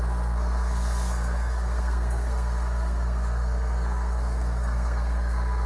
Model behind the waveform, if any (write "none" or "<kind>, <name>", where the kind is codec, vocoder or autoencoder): codec, SNAC